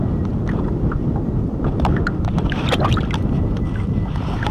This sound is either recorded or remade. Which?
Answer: remade